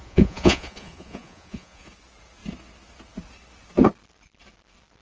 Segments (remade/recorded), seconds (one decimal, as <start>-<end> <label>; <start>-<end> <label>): 0.0-1.9 remade; 1.9-5.0 recorded

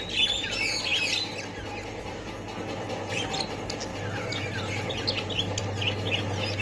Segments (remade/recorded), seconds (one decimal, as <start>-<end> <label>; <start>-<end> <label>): 0.0-6.6 recorded

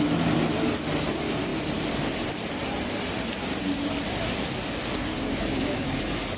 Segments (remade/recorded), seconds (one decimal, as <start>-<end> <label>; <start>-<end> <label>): 0.0-5.1 recorded; 5.1-6.0 remade; 6.0-6.4 recorded

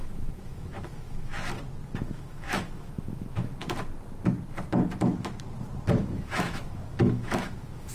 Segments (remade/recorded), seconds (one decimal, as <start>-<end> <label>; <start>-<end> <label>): 0.0-1.3 remade; 1.3-2.0 recorded; 2.0-3.6 remade; 3.6-6.0 recorded; 6.0-7.9 remade

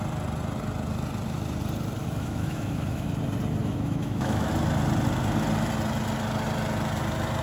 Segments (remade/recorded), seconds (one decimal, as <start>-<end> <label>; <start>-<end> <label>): 0.0-2.0 recorded; 2.0-3.1 remade; 3.1-3.6 recorded; 3.6-4.5 remade; 4.5-7.4 recorded

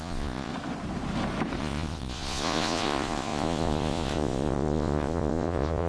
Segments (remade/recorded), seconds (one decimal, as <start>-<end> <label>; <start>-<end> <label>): 0.0-0.5 remade; 0.5-1.6 recorded; 1.6-5.9 remade

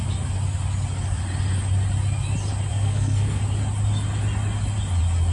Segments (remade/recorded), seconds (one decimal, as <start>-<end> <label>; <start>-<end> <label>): 0.0-2.7 recorded; 2.7-3.4 remade; 3.4-5.3 recorded